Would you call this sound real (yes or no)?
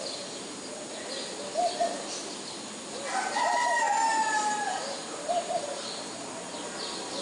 yes